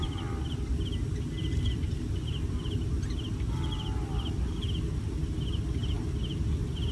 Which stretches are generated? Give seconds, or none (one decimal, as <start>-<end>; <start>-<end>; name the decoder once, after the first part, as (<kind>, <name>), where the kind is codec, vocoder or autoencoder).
none